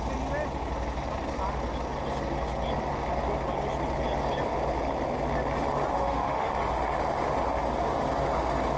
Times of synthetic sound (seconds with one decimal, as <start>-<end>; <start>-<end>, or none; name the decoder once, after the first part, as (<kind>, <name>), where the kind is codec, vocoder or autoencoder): 5.9-6.5 (autoencoder, DAC-VAE)

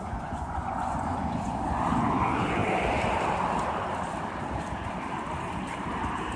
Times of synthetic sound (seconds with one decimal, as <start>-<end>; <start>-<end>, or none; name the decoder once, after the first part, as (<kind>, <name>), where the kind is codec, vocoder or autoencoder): 0.0-2.6 (vocoder, Vocos)